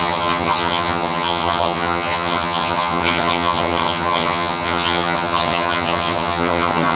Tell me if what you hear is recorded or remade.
remade